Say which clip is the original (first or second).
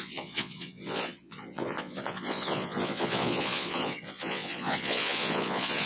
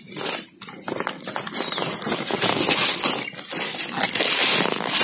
second